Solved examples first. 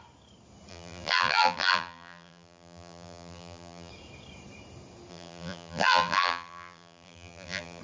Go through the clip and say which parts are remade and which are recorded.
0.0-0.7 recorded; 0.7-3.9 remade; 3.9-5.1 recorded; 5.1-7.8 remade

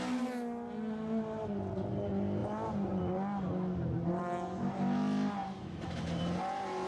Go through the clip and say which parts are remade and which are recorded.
0.0-2.4 recorded; 2.4-3.0 remade; 3.0-5.4 recorded; 5.4-6.2 remade; 6.2-6.9 recorded